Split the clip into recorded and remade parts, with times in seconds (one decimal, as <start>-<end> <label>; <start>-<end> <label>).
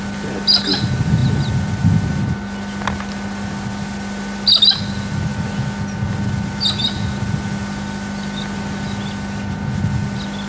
0.0-10.5 recorded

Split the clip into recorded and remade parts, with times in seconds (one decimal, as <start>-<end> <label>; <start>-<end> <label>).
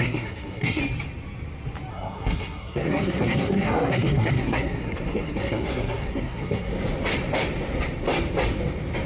0.0-0.8 remade; 0.8-1.9 recorded; 1.9-6.7 remade; 6.7-9.1 recorded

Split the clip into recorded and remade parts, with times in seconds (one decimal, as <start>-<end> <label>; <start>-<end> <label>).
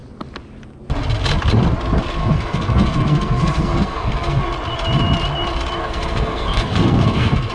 0.0-2.2 recorded; 2.2-4.4 remade; 4.4-5.8 recorded; 5.8-7.5 remade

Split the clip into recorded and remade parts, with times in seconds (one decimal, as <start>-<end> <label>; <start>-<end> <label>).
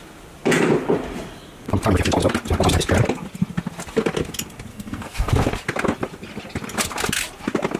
0.0-4.7 recorded; 4.7-5.3 remade; 5.3-7.8 recorded